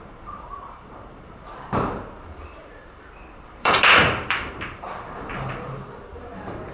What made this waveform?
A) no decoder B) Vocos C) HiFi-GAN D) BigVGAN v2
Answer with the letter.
D